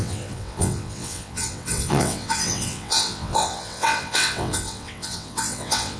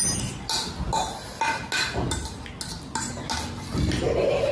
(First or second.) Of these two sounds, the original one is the second